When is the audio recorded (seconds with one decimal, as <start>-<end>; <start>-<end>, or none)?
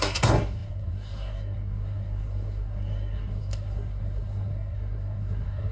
none